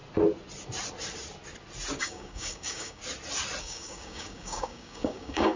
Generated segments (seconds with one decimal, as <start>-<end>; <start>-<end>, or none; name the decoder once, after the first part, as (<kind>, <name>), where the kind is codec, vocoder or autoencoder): 2.0-3.0 (codec, DAC); 3.6-5.6